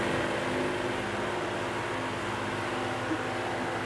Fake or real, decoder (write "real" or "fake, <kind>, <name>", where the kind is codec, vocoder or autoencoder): real